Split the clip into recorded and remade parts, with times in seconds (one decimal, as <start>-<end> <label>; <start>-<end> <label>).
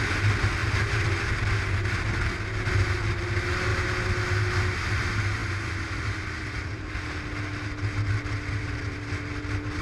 0.0-9.8 recorded